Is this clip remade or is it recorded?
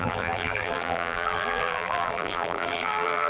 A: remade